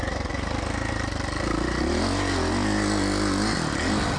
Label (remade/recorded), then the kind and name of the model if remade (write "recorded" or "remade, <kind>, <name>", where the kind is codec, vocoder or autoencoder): recorded